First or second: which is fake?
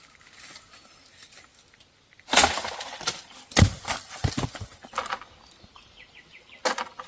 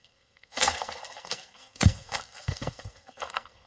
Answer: second